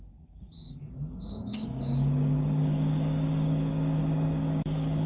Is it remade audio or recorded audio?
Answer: remade